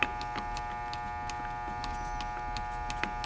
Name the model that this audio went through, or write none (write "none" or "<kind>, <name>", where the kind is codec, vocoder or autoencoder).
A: none